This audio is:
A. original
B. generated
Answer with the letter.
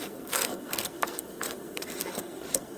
B